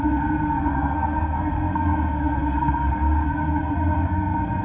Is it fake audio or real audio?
fake